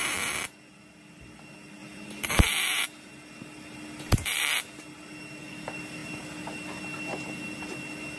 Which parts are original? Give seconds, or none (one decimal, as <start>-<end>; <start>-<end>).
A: 0.0-1.8; 2.3-8.2